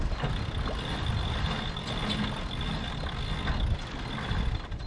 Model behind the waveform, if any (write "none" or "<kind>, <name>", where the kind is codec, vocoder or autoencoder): none